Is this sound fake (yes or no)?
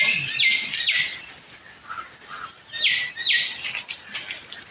no